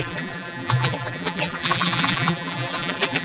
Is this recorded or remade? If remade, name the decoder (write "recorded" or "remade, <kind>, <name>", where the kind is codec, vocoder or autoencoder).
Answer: remade, vocoder, BigVGAN v2